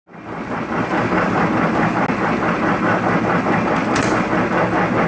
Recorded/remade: recorded